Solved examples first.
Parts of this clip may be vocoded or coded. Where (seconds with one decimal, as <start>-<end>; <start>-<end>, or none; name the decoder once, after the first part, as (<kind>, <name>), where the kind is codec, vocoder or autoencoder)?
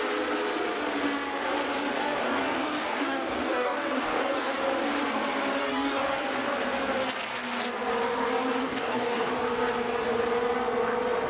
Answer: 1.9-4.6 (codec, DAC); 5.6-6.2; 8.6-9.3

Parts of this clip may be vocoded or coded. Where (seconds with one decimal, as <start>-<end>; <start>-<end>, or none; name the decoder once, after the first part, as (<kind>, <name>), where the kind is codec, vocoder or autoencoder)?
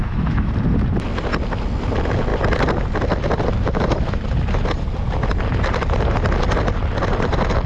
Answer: 0.0-0.5 (autoencoder, DAC-VAE)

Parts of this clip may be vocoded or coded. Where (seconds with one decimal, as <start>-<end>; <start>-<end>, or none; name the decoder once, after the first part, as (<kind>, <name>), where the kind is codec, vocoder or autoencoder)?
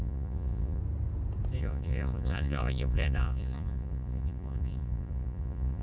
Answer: 0.0-0.8 (vocoder, Vocos); 1.6-5.8